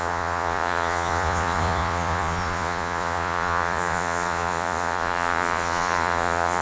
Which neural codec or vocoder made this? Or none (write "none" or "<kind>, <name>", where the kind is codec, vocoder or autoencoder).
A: vocoder, Vocos